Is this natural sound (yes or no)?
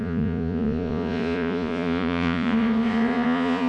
no